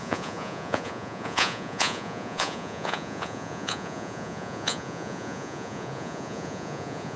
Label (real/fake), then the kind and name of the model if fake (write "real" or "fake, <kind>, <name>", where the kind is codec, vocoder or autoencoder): fake, vocoder, Vocos